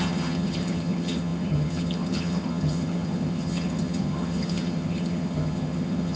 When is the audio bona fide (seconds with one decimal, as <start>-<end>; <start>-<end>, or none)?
none